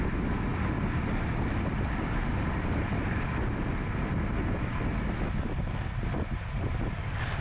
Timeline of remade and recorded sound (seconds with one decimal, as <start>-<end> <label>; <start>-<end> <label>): 0.0-7.4 recorded